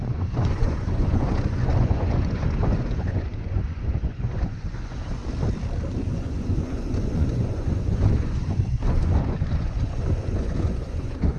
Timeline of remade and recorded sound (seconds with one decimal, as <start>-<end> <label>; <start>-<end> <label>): 0.0-5.2 remade; 5.2-6.0 recorded; 6.0-11.4 remade

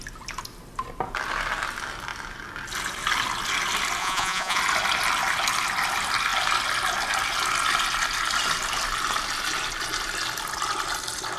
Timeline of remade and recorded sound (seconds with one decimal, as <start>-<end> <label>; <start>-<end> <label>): 0.0-4.0 recorded; 4.0-4.6 remade; 4.6-11.4 recorded

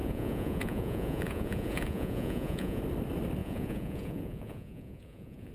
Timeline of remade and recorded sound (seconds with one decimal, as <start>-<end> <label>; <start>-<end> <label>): 0.0-2.8 remade; 2.8-3.4 recorded; 3.4-5.5 remade

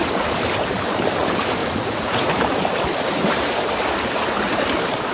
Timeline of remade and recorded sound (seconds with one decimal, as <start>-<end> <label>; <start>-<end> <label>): 0.0-1.6 recorded; 1.6-2.3 remade; 2.3-5.1 recorded

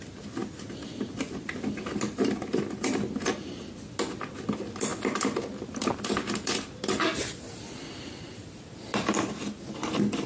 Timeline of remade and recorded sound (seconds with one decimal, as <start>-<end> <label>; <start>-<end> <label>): 0.0-10.3 recorded

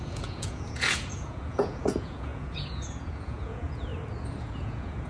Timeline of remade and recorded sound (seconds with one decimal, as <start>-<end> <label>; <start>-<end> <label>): 0.0-3.9 remade; 3.9-4.4 recorded; 4.4-5.1 remade